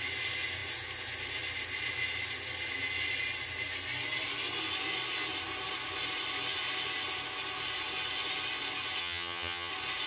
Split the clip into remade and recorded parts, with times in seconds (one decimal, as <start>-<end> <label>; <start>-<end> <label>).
0.0-9.0 recorded; 9.0-9.7 remade; 9.7-10.1 recorded